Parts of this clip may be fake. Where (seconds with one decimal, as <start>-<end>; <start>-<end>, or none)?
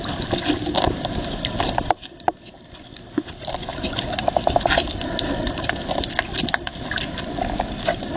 none